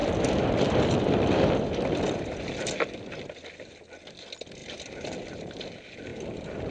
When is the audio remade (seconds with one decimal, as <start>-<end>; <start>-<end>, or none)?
0.0-3.8; 4.6-5.5; 6.1-6.7

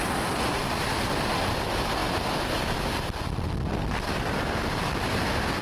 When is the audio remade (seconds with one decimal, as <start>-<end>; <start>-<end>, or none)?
none